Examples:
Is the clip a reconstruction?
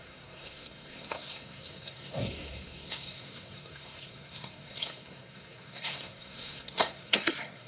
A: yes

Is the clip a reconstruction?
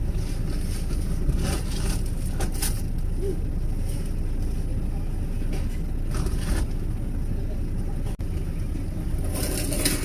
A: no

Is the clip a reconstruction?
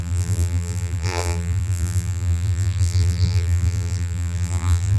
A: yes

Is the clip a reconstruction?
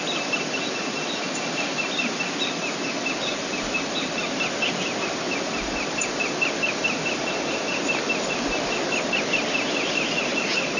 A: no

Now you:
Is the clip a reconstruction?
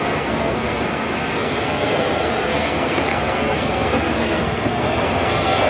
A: yes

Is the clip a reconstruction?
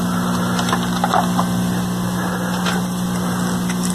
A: no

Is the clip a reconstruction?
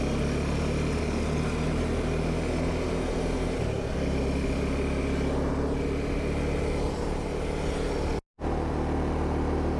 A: no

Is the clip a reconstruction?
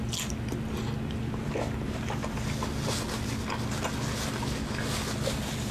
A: no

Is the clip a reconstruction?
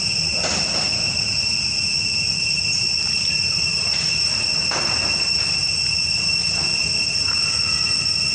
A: no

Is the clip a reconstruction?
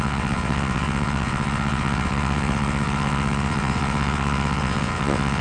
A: yes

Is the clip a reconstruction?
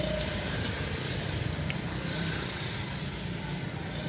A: yes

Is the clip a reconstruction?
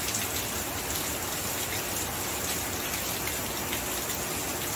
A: no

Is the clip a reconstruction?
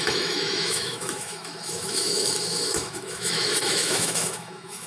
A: yes